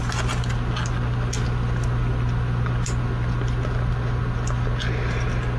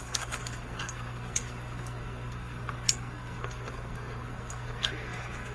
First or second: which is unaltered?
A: first